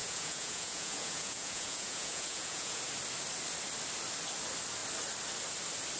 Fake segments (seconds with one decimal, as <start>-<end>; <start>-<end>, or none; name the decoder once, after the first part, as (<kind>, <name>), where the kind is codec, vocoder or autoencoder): 0.0-2.8 (vocoder, Vocos)